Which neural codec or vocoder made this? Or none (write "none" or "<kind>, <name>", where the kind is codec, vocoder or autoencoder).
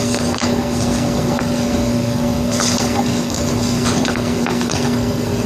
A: codec, SNAC